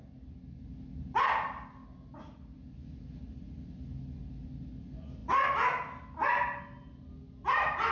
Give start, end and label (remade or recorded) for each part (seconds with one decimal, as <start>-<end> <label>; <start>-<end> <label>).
0.0-7.9 recorded